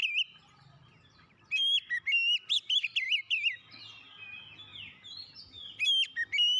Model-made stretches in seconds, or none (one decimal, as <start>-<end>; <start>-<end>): 4.7-5.4